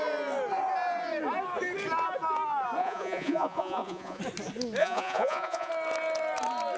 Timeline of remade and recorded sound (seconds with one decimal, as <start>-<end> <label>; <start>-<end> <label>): 0.0-2.8 recorded; 2.8-4.2 remade; 4.2-4.8 recorded; 4.8-5.7 remade; 5.7-6.8 recorded